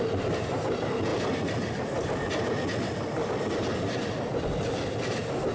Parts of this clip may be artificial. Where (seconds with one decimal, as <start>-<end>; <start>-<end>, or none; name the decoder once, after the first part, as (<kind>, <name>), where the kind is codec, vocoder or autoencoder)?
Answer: none